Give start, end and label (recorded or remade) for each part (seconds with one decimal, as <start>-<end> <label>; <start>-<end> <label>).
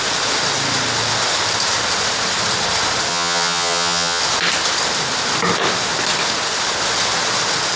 0.0-3.1 recorded; 3.1-4.2 remade; 4.2-7.8 recorded